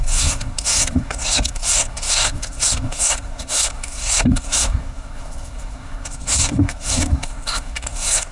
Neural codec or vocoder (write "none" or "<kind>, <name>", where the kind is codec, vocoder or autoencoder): codec, SNAC